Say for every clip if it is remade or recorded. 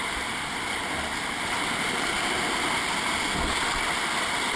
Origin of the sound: recorded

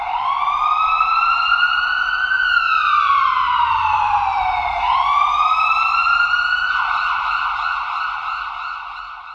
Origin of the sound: recorded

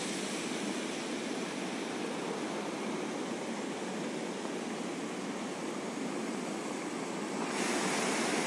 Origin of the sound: recorded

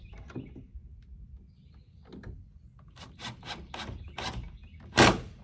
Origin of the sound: recorded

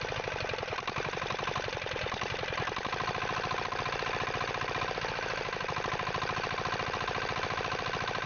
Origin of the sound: recorded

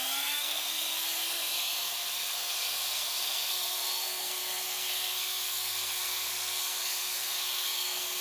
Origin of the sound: remade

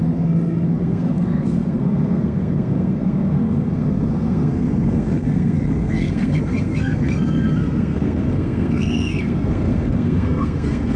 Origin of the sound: remade